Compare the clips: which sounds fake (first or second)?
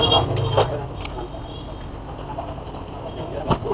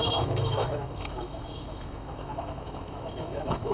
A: second